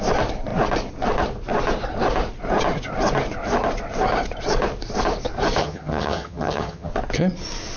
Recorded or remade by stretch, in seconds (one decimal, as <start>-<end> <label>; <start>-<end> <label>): 0.0-5.6 recorded; 5.6-6.9 remade; 6.9-7.8 recorded